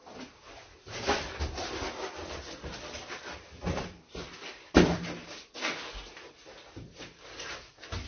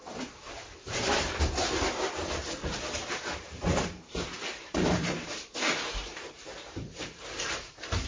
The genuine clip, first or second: first